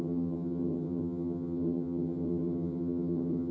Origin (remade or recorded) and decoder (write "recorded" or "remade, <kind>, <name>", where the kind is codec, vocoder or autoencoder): remade, vocoder, HiFi-GAN